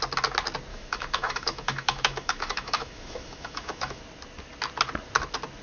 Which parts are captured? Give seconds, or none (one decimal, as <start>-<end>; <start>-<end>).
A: 0.0-0.7; 4.0-5.6